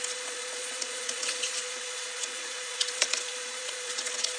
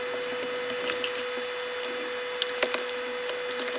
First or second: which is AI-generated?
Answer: first